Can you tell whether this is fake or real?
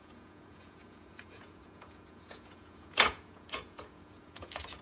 fake